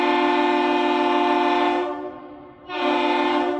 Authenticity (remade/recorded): recorded